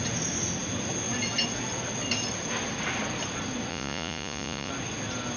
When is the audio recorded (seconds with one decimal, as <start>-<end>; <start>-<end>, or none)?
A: 0.0-3.7; 4.7-5.4